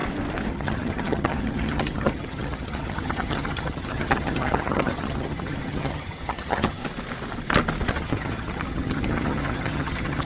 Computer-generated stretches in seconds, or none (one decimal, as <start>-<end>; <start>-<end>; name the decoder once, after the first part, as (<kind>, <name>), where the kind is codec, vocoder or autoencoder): 0.5-6.8 (vocoder, HiFi-GAN); 7.9-10.2